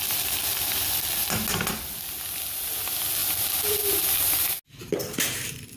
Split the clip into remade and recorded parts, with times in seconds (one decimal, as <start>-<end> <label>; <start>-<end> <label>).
0.0-5.8 recorded

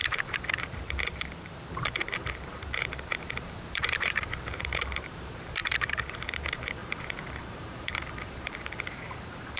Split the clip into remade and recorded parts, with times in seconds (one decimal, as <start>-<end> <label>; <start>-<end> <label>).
0.0-9.6 remade

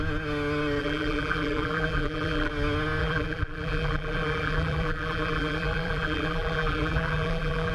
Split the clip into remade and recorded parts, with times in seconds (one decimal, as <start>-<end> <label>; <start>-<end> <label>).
0.0-0.8 recorded; 0.8-2.5 remade; 2.5-3.0 recorded; 3.0-7.7 remade

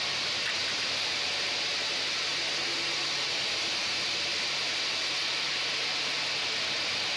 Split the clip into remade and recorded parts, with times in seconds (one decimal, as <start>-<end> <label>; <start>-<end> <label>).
0.0-0.6 recorded; 0.6-1.4 remade; 1.4-4.3 recorded; 4.3-4.8 remade; 4.8-5.2 recorded; 5.2-6.3 remade; 6.3-7.2 recorded

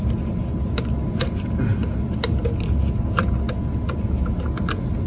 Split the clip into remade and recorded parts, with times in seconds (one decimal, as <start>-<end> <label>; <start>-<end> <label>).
0.0-5.1 recorded

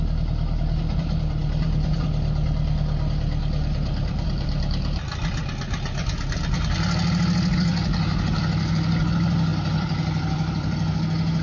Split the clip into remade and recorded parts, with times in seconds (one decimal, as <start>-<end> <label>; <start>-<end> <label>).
0.0-1.4 recorded; 1.4-5.4 remade; 5.4-9.5 recorded; 9.5-10.9 remade; 10.9-11.4 recorded

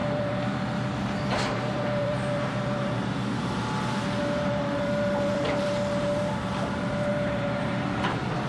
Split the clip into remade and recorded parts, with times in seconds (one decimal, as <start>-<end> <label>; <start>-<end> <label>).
0.0-8.5 remade

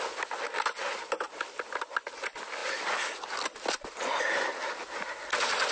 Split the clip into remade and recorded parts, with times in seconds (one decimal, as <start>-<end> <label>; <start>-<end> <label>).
0.0-2.6 recorded; 2.6-4.0 remade; 4.0-5.7 recorded